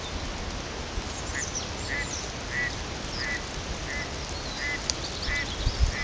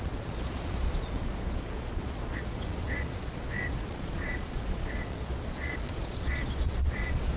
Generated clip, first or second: second